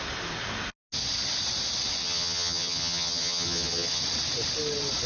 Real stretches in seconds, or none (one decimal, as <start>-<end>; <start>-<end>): 0.0-2.0; 4.0-5.1